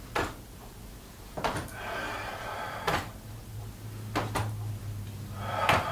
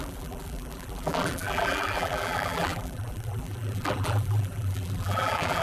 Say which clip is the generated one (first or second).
second